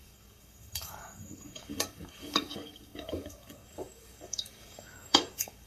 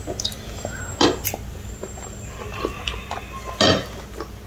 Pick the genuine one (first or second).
second